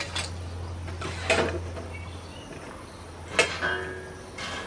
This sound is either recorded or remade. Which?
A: recorded